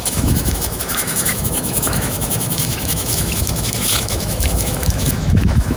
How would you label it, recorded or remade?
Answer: remade